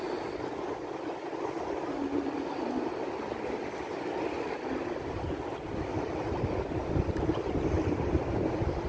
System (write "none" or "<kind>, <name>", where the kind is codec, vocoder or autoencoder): none